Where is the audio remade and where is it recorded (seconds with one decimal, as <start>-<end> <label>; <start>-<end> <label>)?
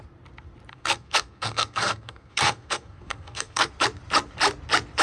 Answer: 0.0-0.7 recorded; 0.7-3.7 remade; 3.7-5.0 recorded